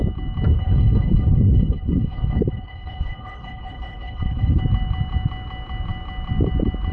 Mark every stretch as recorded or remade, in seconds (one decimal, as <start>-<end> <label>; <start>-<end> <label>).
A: 0.0-0.5 recorded; 0.5-4.6 remade; 4.6-6.9 recorded